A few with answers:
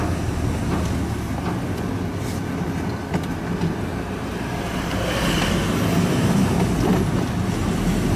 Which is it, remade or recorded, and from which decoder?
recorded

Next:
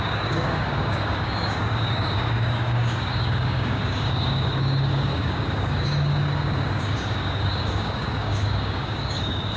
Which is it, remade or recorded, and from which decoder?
remade, codec, DAC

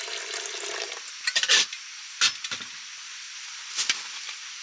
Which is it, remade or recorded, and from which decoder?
recorded